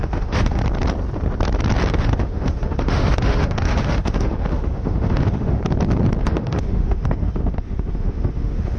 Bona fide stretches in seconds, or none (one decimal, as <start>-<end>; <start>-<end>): 0.6-1.9; 5.6-6.2